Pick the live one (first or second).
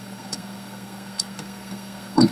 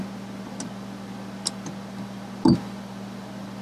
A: second